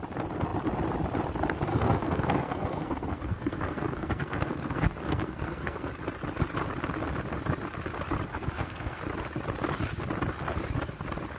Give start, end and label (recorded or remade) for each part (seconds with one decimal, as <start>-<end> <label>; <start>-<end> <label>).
0.0-1.7 recorded; 1.7-5.9 remade; 5.9-8.3 recorded; 8.3-9.0 remade; 9.0-11.4 recorded